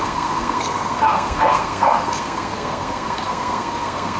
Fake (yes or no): yes